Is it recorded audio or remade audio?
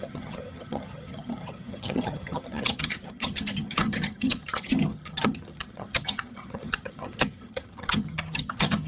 remade